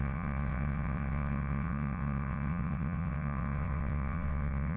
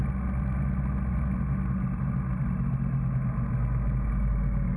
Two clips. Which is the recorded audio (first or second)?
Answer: second